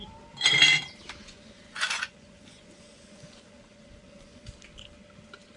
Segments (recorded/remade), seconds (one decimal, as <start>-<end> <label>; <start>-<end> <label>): 0.0-1.2 recorded; 1.2-4.4 remade; 4.4-5.6 recorded